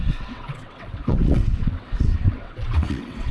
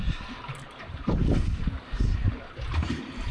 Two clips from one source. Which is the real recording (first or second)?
second